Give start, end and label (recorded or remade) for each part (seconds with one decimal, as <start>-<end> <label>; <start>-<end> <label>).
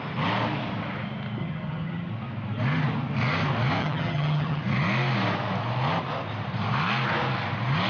0.0-1.4 recorded; 1.4-2.1 remade; 2.1-3.8 recorded; 3.8-4.6 remade; 4.6-7.9 recorded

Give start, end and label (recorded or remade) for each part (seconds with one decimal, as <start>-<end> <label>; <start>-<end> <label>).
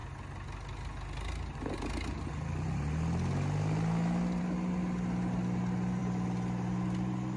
0.0-7.4 recorded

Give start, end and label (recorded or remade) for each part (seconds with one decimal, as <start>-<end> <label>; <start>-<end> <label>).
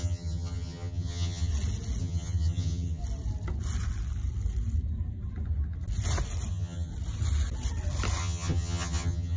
0.0-1.5 remade; 1.5-2.0 recorded; 2.0-3.0 remade; 3.0-6.5 recorded; 6.5-6.9 remade; 6.9-8.2 recorded; 8.2-9.4 remade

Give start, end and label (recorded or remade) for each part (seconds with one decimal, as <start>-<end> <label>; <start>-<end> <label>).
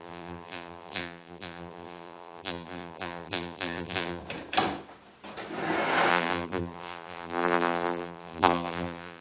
0.0-4.2 remade; 4.2-6.1 recorded; 6.1-9.2 remade